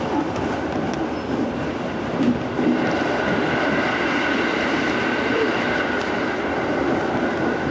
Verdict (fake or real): fake